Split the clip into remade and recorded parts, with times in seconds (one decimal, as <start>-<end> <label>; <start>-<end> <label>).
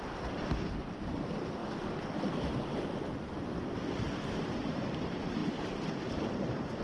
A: 0.0-6.8 recorded